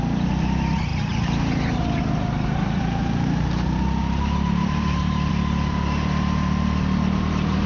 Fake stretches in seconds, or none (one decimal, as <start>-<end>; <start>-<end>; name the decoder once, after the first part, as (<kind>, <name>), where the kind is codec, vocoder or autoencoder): 0.9-5.3 (vocoder, BigVGAN v2)